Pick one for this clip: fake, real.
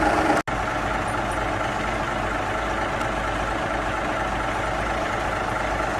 real